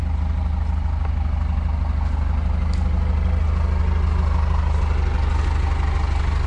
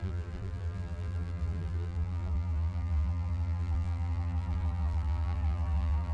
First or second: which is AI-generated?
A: second